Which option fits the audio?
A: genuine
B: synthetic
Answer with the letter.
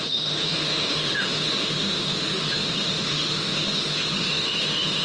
B